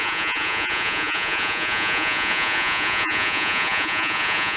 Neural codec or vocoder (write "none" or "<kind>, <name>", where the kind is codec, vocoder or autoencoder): vocoder, Vocos